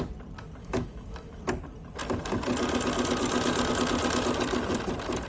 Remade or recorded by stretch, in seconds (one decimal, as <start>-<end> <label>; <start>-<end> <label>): 0.0-0.6 recorded; 0.6-1.4 remade; 1.4-5.3 recorded